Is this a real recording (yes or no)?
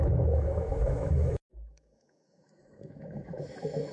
no